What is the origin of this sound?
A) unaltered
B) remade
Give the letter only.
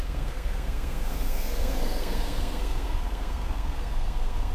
B